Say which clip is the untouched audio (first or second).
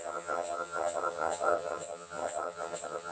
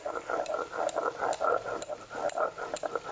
second